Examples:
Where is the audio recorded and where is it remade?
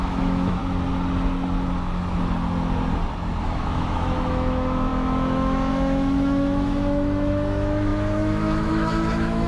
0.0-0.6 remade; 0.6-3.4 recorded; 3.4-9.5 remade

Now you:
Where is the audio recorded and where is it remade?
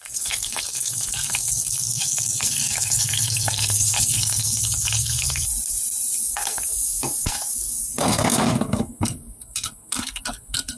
0.0-5.5 remade; 5.5-6.2 recorded; 6.2-10.8 remade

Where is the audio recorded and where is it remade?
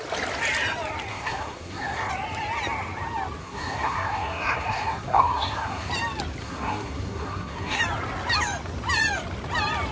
0.0-1.1 recorded; 1.1-2.1 remade; 2.1-3.4 recorded; 3.4-5.9 remade; 5.9-6.4 recorded; 6.4-7.8 remade; 7.8-9.9 recorded